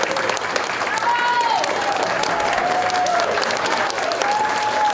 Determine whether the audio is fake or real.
real